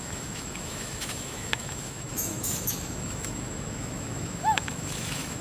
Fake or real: fake